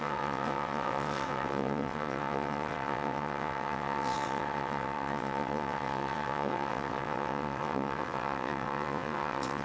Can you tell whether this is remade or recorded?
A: remade